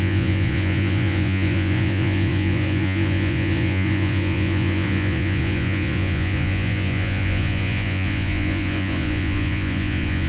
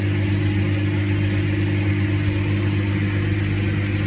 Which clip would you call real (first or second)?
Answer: second